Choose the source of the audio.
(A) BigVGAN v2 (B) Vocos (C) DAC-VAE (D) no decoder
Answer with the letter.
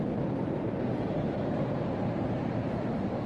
A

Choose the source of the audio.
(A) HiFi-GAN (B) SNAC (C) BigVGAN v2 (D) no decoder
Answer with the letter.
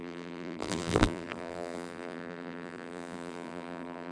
C